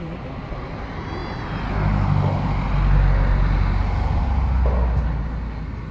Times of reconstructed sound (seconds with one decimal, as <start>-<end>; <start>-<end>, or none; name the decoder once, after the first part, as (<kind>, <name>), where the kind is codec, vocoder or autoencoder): none